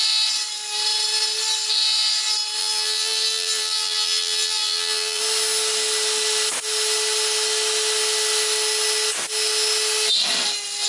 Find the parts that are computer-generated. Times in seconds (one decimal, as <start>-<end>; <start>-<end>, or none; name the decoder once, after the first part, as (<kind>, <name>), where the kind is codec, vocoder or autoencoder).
2.6-5.2 (vocoder, BigVGAN v2)